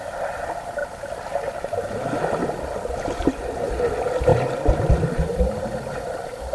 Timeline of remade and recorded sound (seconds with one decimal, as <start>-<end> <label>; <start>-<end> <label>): 0.0-6.5 recorded